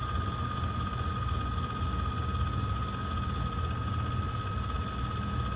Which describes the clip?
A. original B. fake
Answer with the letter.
A